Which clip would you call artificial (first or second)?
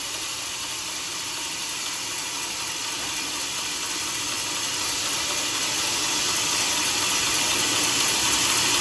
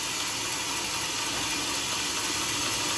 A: first